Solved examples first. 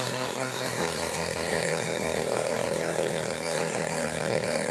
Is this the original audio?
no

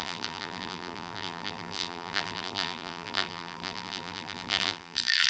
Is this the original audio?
no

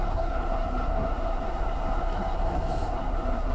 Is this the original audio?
no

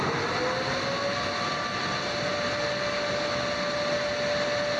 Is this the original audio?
yes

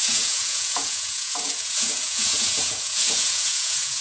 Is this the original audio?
no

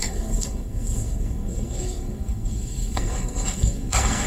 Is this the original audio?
no